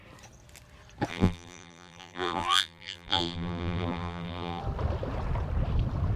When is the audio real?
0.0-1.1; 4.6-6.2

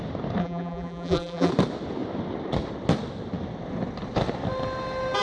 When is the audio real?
0.0-0.4; 1.5-5.2

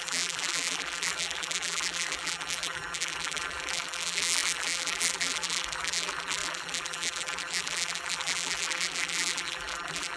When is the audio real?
none